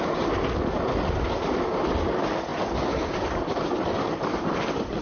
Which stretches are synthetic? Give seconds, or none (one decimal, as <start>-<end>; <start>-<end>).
none